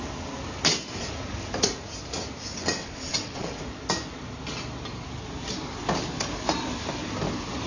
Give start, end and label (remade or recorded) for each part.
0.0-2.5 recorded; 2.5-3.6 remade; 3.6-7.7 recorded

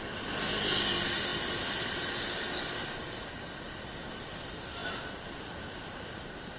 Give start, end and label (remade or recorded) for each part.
0.0-6.6 recorded